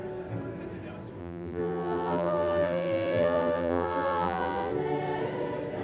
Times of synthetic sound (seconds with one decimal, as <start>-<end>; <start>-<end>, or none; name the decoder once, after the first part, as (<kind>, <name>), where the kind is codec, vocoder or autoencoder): 1.2-4.7 (vocoder, BigVGAN v2)